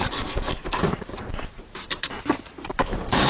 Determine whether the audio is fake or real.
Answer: fake